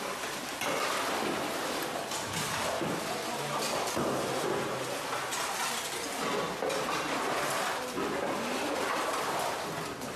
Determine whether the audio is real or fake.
real